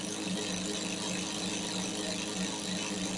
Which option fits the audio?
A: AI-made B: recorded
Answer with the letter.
B